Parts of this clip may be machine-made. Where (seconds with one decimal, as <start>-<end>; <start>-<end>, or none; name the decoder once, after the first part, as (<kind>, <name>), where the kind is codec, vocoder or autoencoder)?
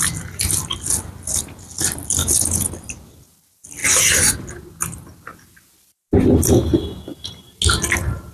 2.2-2.7 (vocoder, Vocos)